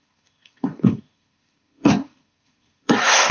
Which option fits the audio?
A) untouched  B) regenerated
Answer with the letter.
B